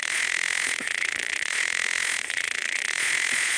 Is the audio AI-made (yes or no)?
yes